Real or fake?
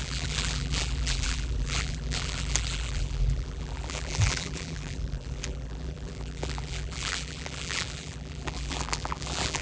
fake